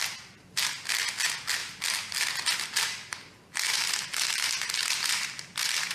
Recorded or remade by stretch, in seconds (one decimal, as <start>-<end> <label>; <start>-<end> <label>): 0.0-5.9 recorded